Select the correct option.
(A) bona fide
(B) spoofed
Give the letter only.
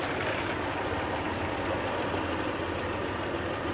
A